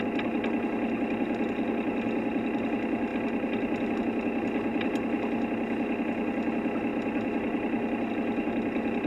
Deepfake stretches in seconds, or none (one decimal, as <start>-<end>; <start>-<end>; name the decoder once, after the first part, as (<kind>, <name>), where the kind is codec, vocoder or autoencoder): none

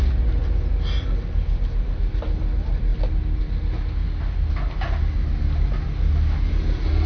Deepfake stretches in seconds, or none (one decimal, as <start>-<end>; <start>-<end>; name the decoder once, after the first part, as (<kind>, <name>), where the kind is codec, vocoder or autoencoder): none

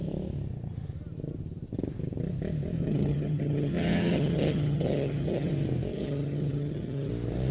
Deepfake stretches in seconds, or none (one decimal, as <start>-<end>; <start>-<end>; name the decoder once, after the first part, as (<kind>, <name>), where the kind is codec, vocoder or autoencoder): 2.8-5.5 (vocoder, HiFi-GAN); 5.9-7.1